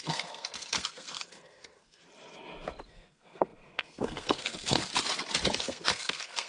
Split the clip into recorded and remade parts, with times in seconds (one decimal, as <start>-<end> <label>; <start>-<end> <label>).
0.0-2.0 remade; 2.0-2.9 recorded; 2.9-4.9 remade; 4.9-5.6 recorded; 5.6-6.5 remade